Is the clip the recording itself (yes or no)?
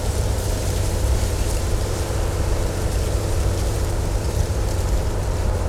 no